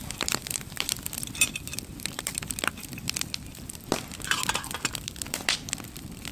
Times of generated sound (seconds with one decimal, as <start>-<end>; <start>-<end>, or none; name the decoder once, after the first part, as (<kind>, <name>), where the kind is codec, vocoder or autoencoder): 0.0-6.3 (vocoder, BigVGAN v2)